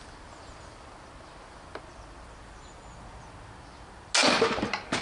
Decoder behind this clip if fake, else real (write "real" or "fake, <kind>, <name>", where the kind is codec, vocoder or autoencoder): real